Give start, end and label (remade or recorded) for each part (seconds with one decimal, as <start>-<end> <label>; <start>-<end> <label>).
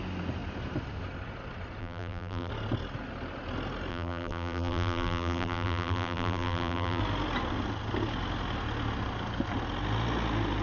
0.0-1.8 recorded; 1.8-2.5 remade; 2.5-3.9 recorded; 3.9-7.0 remade; 7.0-10.6 recorded